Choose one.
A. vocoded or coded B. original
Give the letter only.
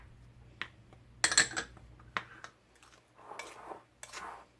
B